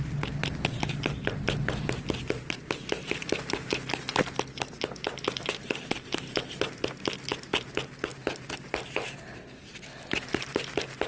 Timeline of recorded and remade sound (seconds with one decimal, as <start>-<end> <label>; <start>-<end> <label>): 0.0-11.1 recorded